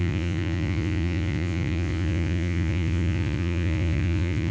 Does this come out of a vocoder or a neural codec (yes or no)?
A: yes